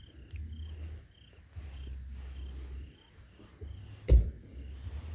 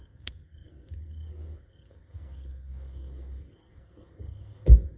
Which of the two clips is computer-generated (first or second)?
second